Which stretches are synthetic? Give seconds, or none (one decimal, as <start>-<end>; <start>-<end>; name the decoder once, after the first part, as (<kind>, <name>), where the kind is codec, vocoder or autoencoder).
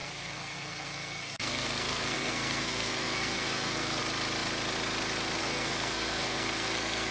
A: 0.0-4.0 (codec, SNAC); 5.4-7.1